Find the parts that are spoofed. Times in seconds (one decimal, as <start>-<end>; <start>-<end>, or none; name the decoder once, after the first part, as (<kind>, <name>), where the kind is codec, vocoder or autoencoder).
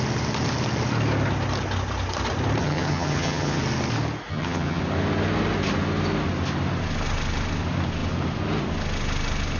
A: 2.6-3.6 (vocoder, HiFi-GAN); 4.3-4.8